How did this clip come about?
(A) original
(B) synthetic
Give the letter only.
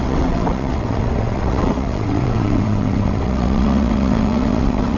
B